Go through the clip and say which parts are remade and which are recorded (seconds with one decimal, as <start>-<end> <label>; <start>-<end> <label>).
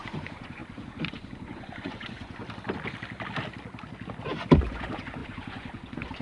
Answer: 0.0-2.4 remade; 2.4-4.6 recorded; 4.6-6.2 remade